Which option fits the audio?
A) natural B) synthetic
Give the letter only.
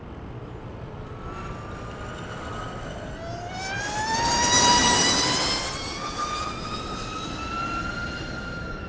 A